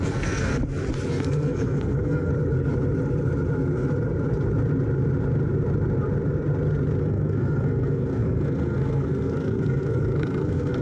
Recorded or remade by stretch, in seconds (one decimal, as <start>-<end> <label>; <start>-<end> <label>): 0.0-0.5 remade; 0.5-1.1 recorded; 1.1-2.3 remade; 2.3-7.0 recorded; 7.0-10.8 remade